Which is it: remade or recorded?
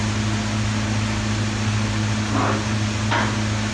recorded